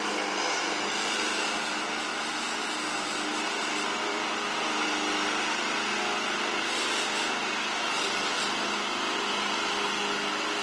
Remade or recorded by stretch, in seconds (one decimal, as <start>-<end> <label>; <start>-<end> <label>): 0.0-4.1 recorded; 4.1-4.8 remade; 4.8-10.6 recorded